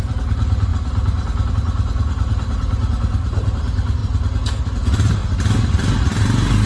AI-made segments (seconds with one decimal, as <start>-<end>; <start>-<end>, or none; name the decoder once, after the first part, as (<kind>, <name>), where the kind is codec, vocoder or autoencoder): 0.0-0.7 (vocoder, BigVGAN v2); 1.5-4.0; 4.6-5.2